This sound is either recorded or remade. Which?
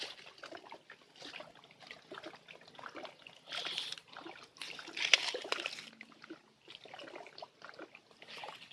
recorded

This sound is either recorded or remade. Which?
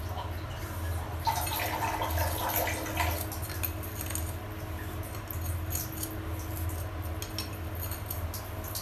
recorded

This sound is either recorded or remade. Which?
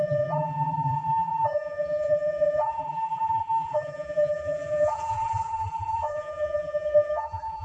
remade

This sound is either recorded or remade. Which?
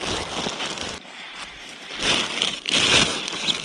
recorded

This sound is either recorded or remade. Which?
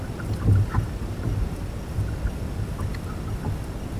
recorded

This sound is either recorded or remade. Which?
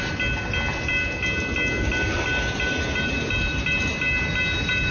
recorded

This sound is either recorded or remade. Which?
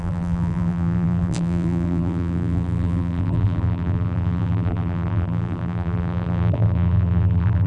remade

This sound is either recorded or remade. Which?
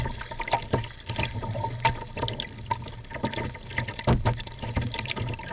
recorded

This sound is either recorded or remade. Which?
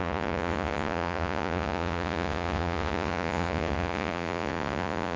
remade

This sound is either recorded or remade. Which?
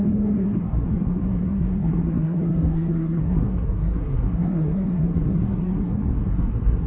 remade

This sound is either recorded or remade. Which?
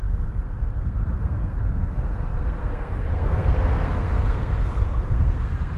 remade